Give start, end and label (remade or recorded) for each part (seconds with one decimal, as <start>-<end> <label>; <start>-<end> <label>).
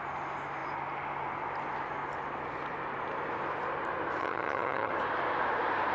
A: 0.0-4.2 recorded; 4.2-4.9 remade; 4.9-5.9 recorded